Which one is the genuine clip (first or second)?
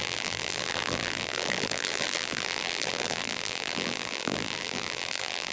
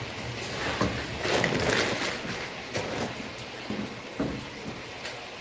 second